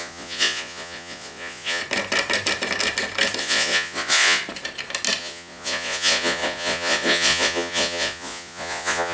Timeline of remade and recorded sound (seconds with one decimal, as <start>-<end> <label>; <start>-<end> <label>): 0.0-1.8 remade; 1.8-3.4 recorded; 3.4-4.4 remade; 4.4-5.2 recorded; 5.2-9.1 remade